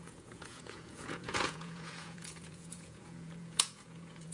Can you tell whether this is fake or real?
fake